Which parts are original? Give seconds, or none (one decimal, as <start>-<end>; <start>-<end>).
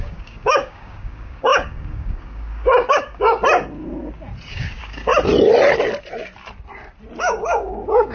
3.4-4.5; 5.1-7.2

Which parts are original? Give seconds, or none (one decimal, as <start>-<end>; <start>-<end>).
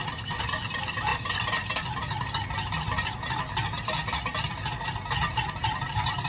0.0-6.3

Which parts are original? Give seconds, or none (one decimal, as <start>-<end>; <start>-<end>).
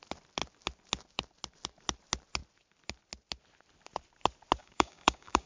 0.0-4.6